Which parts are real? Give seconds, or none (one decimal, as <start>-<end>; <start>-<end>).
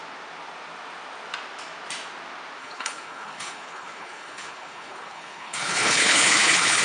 0.0-2.6